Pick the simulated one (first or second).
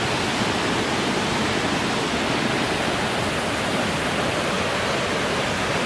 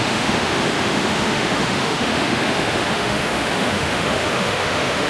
second